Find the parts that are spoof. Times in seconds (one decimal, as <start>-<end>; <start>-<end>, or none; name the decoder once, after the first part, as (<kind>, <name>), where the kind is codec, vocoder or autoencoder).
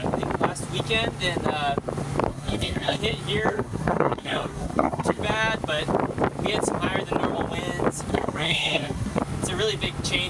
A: 2.3-3.0 (codec, SNAC); 3.5-5.2; 8.1-9.2